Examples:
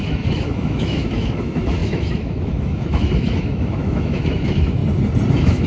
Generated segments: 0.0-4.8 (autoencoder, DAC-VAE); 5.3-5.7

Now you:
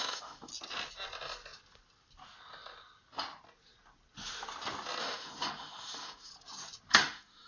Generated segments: 0.0-0.5 (autoencoder, DAC-VAE); 5.0-6.3; 6.9-7.5

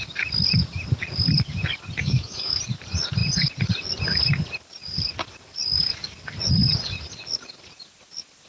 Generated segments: 2.0-2.6 (autoencoder, DAC-VAE)

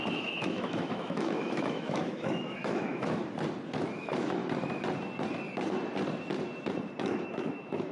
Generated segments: 0.0-3.2 (autoencoder, DAC-VAE); 4.0-4.4; 7.0-7.9

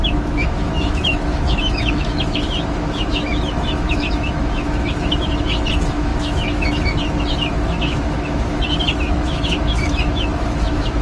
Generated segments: 0.0-11.0 (autoencoder, DAC-VAE)

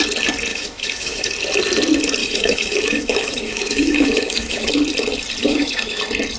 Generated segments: 0.5-1.3 (autoencoder, DAC-VAE); 2.2-4.7; 5.4-6.0